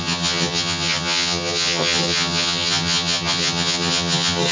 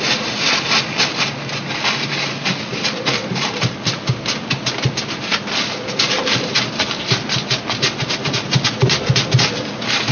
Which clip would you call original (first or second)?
second